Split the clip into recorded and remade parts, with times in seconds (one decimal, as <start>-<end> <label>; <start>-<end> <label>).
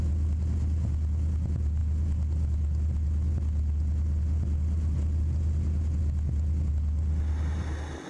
0.0-8.1 recorded